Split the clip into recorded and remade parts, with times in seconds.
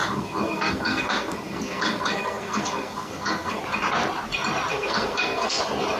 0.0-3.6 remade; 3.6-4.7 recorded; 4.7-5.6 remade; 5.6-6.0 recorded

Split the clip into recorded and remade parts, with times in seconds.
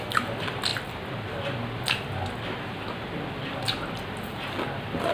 0.0-5.1 recorded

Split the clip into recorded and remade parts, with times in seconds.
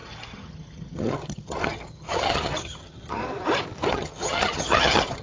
0.0-3.2 remade; 3.2-3.9 recorded; 3.9-5.2 remade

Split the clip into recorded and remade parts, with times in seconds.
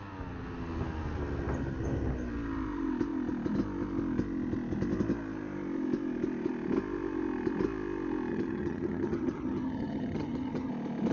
0.0-8.3 recorded; 8.3-10.7 remade; 10.7-11.1 recorded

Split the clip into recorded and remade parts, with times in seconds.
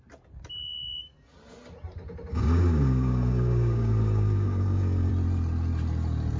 0.0-2.3 recorded; 2.3-5.1 remade; 5.1-6.4 recorded